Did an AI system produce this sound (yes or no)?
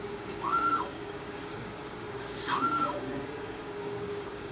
yes